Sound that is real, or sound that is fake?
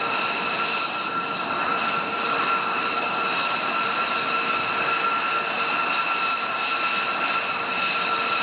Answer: real